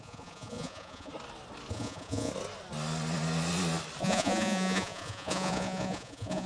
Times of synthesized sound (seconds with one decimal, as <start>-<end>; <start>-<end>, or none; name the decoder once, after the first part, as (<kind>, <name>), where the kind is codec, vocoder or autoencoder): 0.0-1.1 (vocoder, Vocos); 1.7-2.3; 4.0-6.5